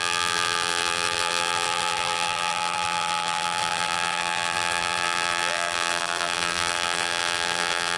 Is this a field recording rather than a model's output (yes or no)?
no